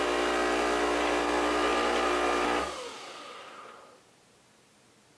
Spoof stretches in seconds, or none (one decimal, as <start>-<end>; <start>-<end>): none